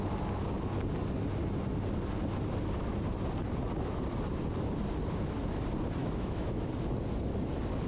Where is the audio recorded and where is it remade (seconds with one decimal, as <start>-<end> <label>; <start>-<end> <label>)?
0.0-6.0 recorded; 6.0-6.6 remade; 6.6-7.9 recorded